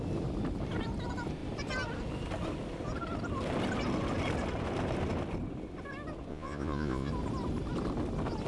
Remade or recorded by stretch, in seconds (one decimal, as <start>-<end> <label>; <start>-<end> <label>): 0.0-6.3 recorded; 6.3-7.1 remade; 7.1-8.5 recorded